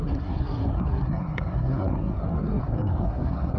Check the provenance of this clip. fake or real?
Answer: fake